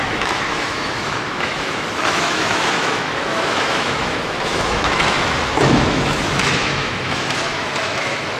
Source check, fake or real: fake